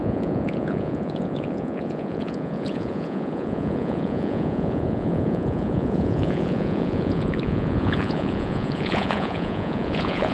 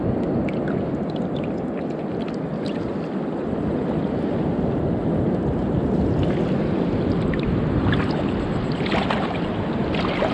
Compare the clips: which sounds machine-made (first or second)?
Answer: first